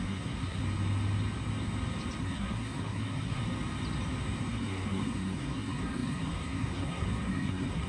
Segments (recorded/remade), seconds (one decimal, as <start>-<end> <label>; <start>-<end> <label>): 0.0-0.6 remade; 0.6-2.2 recorded; 2.2-3.4 remade; 3.4-4.5 recorded; 4.5-7.9 remade